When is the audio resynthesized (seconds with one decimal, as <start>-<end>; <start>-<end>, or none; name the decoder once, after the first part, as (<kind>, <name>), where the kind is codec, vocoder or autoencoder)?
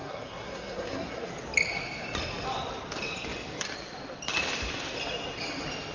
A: 0.0-1.3 (codec, SNAC)